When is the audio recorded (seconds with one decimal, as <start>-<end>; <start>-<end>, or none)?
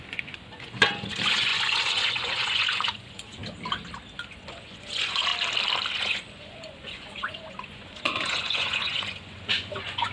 3.4-4.3; 5.3-5.9